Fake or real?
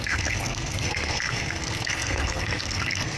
fake